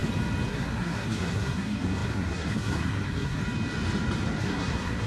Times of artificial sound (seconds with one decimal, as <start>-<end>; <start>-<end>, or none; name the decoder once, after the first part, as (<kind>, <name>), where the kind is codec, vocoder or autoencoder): 0.5-3.4 (codec, SNAC); 4.4-5.1